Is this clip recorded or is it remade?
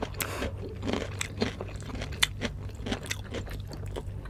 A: recorded